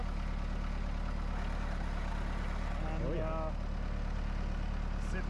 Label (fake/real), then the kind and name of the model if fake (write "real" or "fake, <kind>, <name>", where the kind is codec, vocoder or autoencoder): real